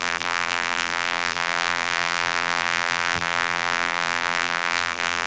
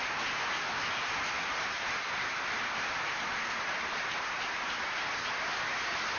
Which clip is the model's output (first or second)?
first